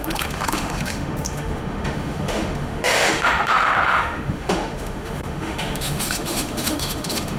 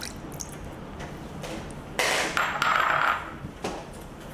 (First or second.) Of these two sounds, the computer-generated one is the first